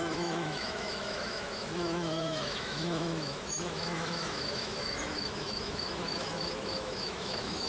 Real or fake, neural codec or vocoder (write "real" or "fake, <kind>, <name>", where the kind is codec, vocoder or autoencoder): fake, autoencoder, DAC-VAE